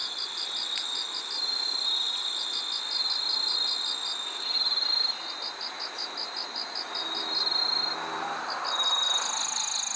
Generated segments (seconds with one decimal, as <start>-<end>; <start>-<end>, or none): none